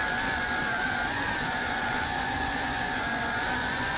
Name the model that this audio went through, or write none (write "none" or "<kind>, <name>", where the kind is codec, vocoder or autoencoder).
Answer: vocoder, Vocos